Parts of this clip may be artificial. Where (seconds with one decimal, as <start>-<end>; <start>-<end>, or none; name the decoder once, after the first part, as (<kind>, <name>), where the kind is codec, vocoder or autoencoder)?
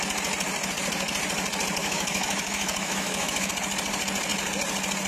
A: 1.8-3.5 (autoencoder, DAC-VAE)